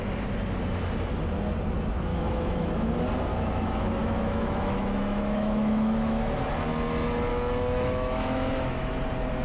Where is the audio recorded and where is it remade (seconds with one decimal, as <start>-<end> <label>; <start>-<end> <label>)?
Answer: 0.0-2.1 recorded; 2.1-2.9 remade; 2.9-3.3 recorded; 3.3-6.5 remade; 6.5-7.3 recorded; 7.3-8.9 remade; 8.9-9.4 recorded